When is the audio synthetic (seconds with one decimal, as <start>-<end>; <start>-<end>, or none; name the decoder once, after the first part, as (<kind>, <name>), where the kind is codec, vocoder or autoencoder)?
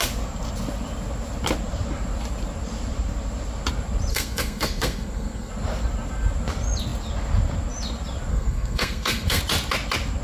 4.1-5.5 (codec, SNAC); 8.3-9.4